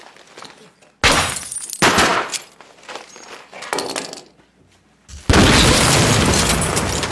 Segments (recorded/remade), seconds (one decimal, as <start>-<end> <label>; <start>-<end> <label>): 0.0-7.1 recorded